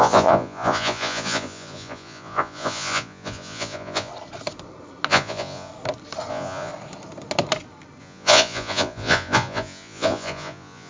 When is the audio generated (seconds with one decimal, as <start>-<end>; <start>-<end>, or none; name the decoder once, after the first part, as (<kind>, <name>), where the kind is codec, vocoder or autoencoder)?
0.0-4.1 (vocoder, Vocos); 5.1-5.7; 6.3-6.7; 8.0-10.9